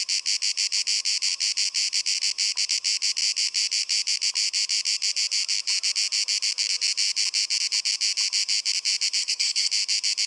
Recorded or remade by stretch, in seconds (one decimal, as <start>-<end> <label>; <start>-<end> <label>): 0.0-9.2 recorded; 9.2-9.7 remade; 9.7-10.3 recorded